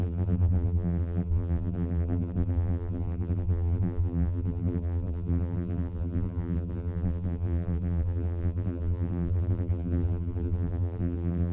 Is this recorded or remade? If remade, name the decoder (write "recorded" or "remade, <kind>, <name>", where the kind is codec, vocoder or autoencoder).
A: remade, vocoder, BigVGAN v2